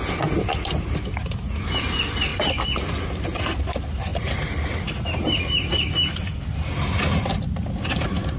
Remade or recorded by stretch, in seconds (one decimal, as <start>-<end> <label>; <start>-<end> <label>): 0.0-2.3 recorded; 2.3-2.8 remade; 2.8-4.1 recorded; 4.1-4.7 remade; 4.7-8.4 recorded